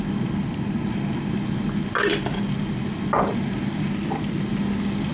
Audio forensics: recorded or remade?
recorded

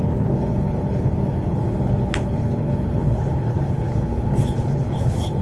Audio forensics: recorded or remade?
remade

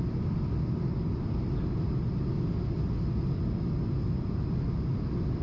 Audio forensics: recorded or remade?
recorded